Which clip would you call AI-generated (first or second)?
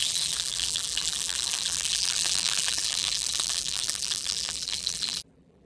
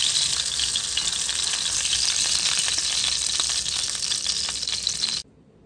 first